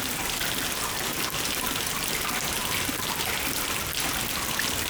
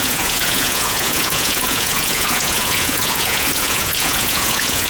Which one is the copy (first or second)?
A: second